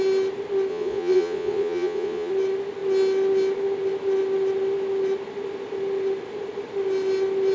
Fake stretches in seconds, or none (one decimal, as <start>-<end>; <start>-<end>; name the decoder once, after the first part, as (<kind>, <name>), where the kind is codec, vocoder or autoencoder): 0.7-2.3 (vocoder, Vocos)